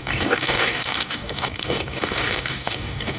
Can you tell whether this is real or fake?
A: fake